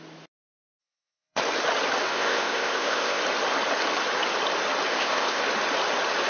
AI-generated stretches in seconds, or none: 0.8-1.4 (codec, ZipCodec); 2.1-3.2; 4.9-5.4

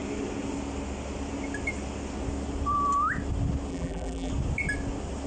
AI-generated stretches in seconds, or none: 3.7-4.3 (vocoder, BigVGAN v2)

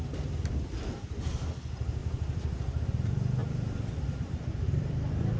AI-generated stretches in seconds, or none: 2.0-2.8 (vocoder, BigVGAN v2); 3.4-3.9